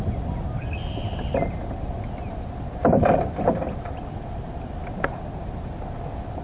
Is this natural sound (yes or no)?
yes